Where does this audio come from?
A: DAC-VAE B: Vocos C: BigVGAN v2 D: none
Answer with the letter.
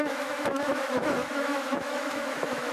A